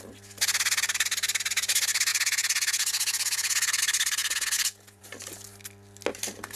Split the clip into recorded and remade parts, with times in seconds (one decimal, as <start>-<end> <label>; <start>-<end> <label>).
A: 0.0-2.1 recorded; 2.1-3.8 remade; 3.8-4.2 recorded; 4.2-5.0 remade; 5.0-6.6 recorded